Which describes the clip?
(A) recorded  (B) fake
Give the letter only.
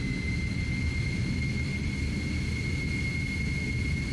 A